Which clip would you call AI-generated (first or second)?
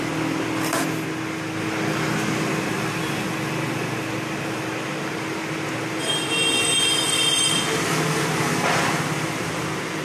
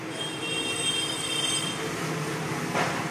second